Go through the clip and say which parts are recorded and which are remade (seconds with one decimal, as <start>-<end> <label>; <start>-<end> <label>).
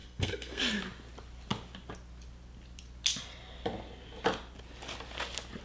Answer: 0.0-0.6 remade; 0.6-5.6 recorded